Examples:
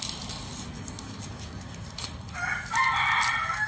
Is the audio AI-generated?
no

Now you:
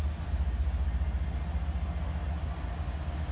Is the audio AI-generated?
no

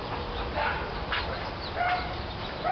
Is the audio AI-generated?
no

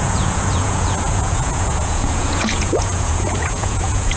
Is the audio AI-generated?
yes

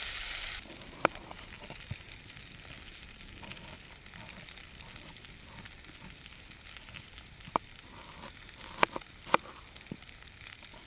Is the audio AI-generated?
no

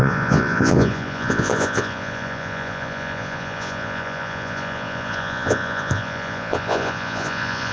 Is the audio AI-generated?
yes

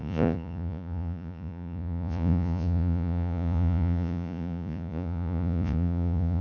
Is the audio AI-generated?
yes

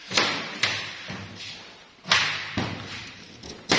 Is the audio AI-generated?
no